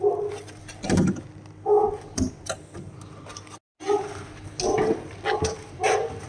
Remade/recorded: recorded